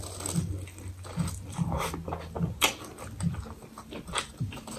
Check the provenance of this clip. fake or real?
real